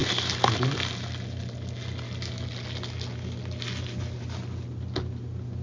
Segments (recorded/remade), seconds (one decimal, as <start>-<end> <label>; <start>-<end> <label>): 0.0-5.6 recorded